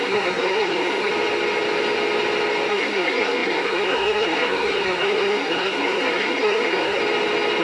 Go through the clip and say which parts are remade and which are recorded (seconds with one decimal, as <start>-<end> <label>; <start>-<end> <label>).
0.0-1.1 remade; 1.1-2.7 recorded; 2.7-7.0 remade; 7.0-7.6 recorded